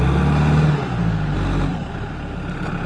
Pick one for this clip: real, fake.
real